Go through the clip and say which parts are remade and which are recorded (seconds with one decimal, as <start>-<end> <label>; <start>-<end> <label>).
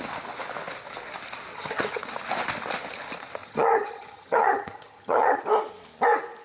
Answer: 0.0-1.5 recorded; 1.5-2.0 remade; 2.0-3.4 recorded; 3.4-5.4 remade; 5.4-6.4 recorded